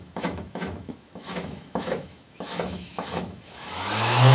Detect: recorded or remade remade